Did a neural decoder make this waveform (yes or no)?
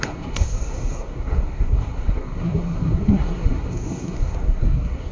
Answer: yes